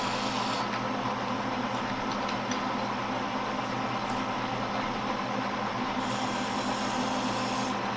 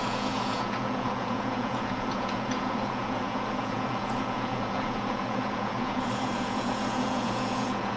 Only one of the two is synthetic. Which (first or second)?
second